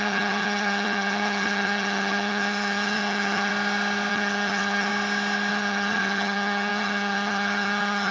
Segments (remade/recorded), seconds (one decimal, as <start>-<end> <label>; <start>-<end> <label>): 0.0-3.5 remade; 3.5-4.1 recorded; 4.1-4.9 remade; 4.9-5.5 recorded; 5.5-8.1 remade